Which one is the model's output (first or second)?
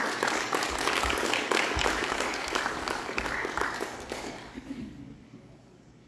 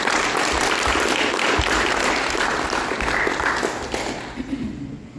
first